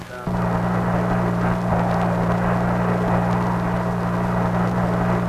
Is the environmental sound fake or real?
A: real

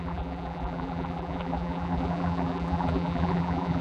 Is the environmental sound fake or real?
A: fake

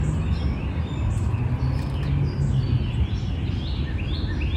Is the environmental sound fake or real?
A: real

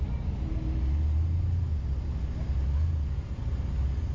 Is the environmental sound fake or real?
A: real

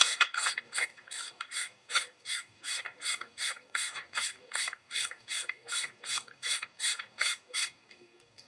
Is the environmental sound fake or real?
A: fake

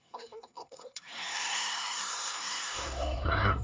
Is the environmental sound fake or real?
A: fake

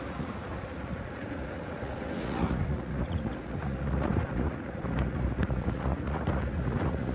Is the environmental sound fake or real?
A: fake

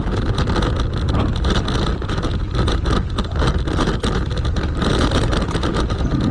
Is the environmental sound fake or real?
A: real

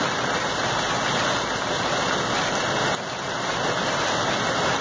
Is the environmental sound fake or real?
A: real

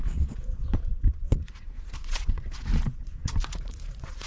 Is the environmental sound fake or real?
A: fake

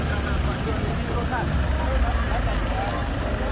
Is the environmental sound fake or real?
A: real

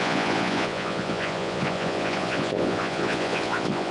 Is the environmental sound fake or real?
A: fake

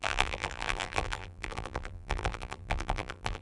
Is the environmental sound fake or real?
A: fake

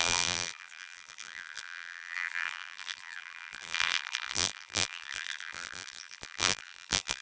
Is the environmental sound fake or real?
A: fake